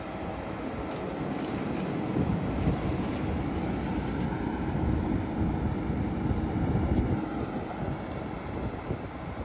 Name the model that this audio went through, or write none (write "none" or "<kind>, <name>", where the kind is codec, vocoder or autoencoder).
none